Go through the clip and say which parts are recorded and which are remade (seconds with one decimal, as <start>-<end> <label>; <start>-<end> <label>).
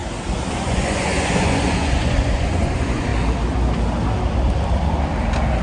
0.0-0.5 recorded; 0.5-3.1 remade; 3.1-5.6 recorded